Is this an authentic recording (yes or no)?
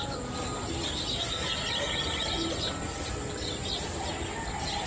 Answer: yes